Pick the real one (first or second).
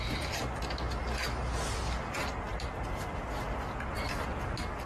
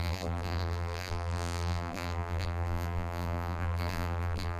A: first